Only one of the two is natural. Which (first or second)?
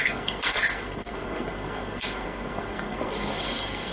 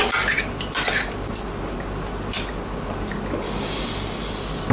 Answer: second